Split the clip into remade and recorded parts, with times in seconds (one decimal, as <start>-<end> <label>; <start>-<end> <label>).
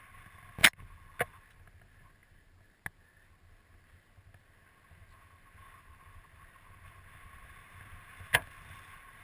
0.0-9.2 recorded